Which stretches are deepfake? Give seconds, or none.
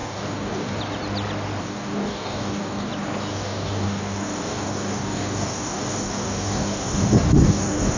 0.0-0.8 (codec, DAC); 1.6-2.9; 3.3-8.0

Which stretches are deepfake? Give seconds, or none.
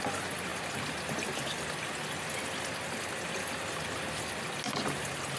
none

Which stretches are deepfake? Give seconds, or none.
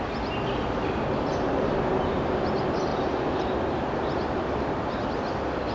none